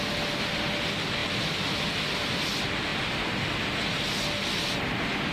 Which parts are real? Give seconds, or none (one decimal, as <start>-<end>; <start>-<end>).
0.0-5.3